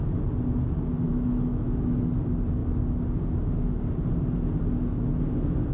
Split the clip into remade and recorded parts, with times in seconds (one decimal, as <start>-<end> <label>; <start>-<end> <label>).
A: 0.0-1.1 recorded; 1.1-2.0 remade; 2.0-5.7 recorded